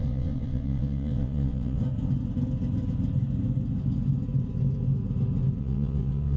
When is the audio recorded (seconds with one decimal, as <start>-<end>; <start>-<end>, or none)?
1.8-5.6

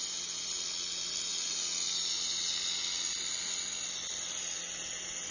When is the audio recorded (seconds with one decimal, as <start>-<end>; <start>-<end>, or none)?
0.0-5.3

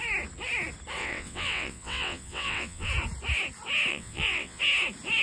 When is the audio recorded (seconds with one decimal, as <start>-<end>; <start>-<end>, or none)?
0.0-1.0; 2.9-3.9; 4.6-5.2

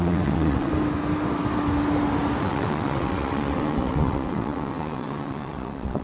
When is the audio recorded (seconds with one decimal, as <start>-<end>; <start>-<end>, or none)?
0.7-2.4